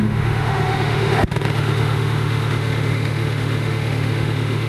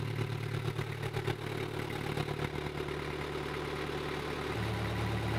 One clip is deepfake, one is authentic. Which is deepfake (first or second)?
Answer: first